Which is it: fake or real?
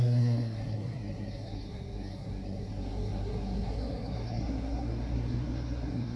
fake